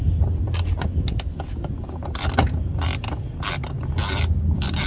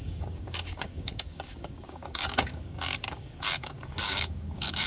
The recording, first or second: first